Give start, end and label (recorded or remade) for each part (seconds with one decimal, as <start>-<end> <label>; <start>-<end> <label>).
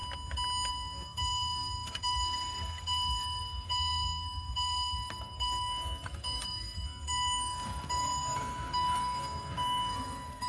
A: 0.0-0.7 recorded; 0.7-10.5 remade